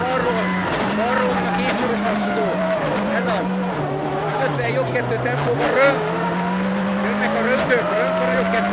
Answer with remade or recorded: recorded